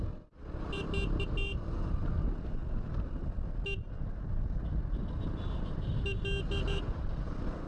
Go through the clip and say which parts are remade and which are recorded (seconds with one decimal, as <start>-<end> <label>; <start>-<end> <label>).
0.0-7.7 recorded